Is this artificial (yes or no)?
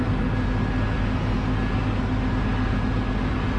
no